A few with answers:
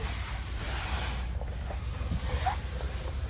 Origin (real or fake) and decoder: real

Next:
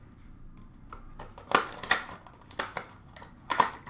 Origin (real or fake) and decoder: real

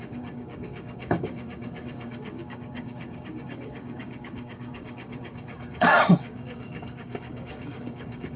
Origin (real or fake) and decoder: fake, codec, DAC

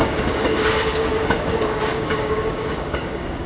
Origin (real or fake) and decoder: fake, codec, DAC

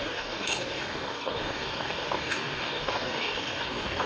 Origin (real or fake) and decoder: fake, codec, DAC